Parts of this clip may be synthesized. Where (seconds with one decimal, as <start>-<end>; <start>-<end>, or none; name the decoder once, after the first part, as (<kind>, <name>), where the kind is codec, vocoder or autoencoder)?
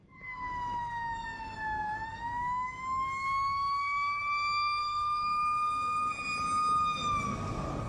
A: 0.0-4.2 (codec, DAC); 4.8-6.1